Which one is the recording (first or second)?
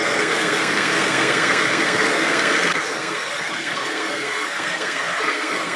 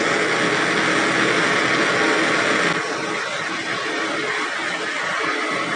second